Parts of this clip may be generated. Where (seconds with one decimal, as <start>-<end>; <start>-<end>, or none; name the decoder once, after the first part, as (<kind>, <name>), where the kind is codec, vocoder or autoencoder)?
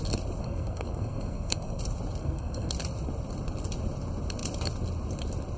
0.4-1.8 (codec, SNAC); 2.2-2.7